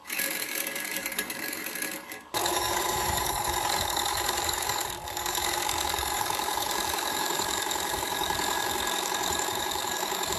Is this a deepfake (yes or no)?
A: yes